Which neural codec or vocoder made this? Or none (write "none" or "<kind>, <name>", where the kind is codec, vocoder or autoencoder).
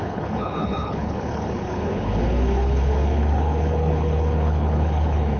codec, HILCodec